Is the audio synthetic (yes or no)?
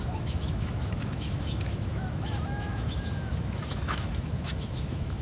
yes